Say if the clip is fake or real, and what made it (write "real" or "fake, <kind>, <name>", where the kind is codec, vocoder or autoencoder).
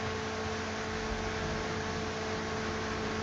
real